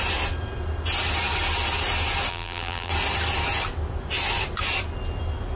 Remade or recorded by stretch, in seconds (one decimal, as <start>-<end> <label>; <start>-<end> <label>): 0.0-2.3 recorded; 2.3-2.9 remade; 2.9-5.6 recorded